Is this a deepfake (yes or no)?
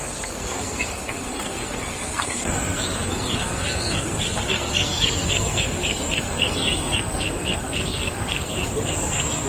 yes